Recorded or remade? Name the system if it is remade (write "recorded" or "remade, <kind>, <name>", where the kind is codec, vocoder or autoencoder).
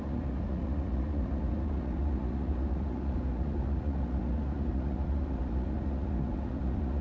remade, vocoder, Vocos